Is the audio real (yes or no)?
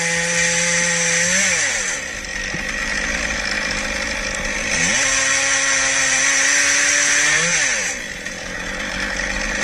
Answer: yes